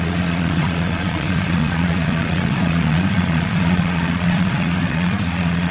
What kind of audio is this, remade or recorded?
remade